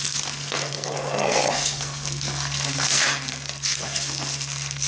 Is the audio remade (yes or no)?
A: yes